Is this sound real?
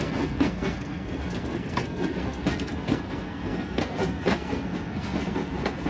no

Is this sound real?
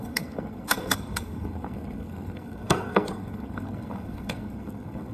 no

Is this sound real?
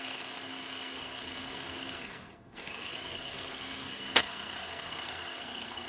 no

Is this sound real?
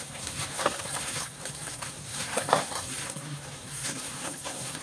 no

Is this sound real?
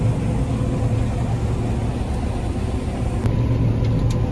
yes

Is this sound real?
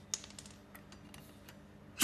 yes